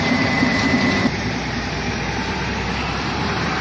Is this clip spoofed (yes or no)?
yes